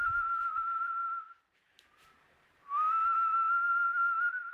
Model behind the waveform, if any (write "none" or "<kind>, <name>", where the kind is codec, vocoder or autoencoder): vocoder, BigVGAN v2